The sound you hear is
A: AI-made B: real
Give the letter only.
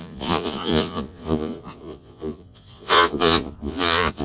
A